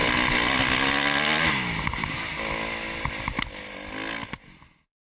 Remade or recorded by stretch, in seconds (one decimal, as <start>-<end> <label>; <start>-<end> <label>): 0.0-5.2 recorded